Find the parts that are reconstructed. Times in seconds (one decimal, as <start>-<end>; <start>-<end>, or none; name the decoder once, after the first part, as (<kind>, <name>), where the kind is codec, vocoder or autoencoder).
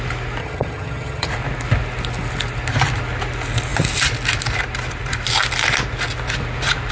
0.4-1.3 (vocoder, HiFi-GAN)